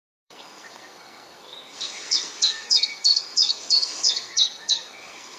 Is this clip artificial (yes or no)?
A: yes